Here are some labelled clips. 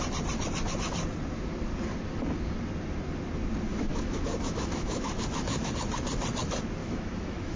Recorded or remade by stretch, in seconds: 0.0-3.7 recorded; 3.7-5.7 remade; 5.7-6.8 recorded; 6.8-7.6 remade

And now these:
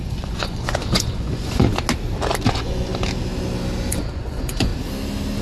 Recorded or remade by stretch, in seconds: 0.0-1.7 remade; 1.7-2.5 recorded; 2.5-2.9 remade; 2.9-3.9 recorded; 3.9-4.7 remade; 4.7-5.4 recorded

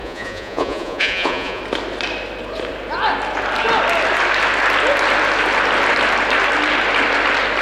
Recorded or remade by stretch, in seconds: 0.0-1.6 remade; 1.6-7.6 recorded

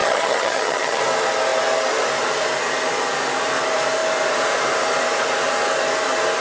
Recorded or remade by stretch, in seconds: 0.0-1.0 remade; 1.0-6.4 recorded

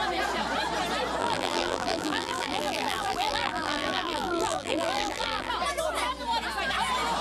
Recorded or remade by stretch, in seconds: 0.0-1.2 recorded; 1.2-5.5 remade; 5.5-7.2 recorded

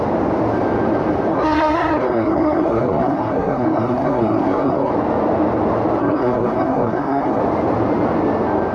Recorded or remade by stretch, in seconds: 0.0-1.3 recorded; 1.3-4.9 remade; 4.9-6.0 recorded; 6.0-7.4 remade; 7.4-8.7 recorded

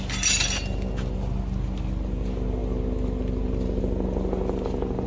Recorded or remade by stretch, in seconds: 0.0-5.1 recorded